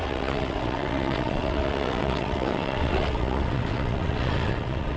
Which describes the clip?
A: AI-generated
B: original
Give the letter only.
A